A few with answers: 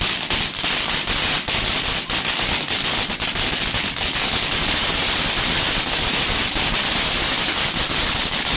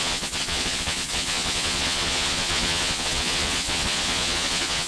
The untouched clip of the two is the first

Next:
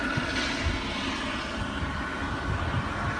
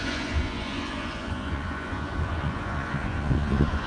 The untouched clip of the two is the first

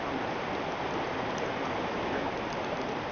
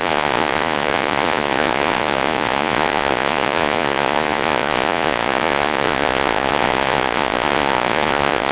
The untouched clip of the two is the first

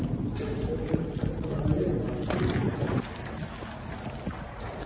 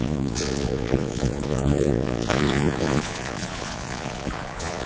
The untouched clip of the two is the first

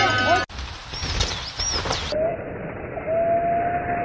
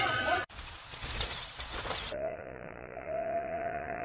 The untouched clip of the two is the first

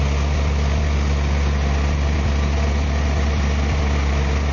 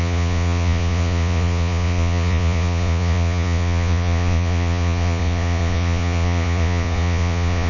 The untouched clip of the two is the first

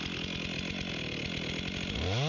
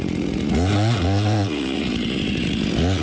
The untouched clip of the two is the first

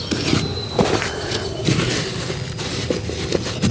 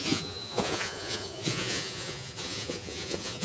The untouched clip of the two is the first